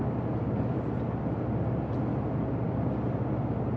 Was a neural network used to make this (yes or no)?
no